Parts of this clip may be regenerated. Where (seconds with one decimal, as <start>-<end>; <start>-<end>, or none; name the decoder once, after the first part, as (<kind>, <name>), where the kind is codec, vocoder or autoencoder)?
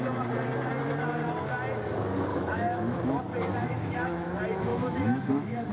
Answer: 2.3-3.2 (autoencoder, DAC-VAE); 3.6-4.3; 4.7-5.7